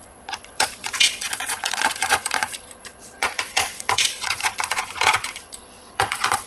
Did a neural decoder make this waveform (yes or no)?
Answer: yes